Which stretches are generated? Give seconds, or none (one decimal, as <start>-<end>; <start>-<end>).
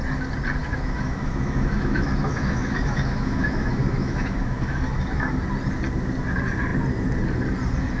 0.6-5.4